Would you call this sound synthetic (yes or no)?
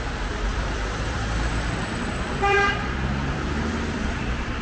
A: yes